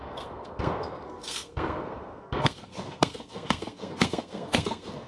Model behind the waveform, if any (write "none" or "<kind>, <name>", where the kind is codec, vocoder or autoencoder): codec, SNAC